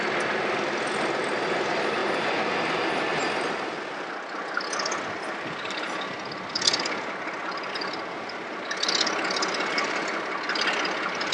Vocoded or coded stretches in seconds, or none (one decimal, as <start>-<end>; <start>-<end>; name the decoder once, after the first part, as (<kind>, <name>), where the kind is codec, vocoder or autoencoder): none